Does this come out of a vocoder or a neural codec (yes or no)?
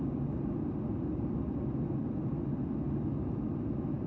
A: no